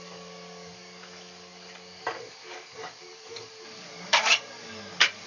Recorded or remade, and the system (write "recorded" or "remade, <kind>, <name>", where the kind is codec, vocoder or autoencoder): remade, codec, DAC